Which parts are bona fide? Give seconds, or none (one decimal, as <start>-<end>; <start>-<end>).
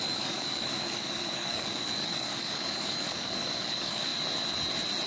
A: 4.1-5.1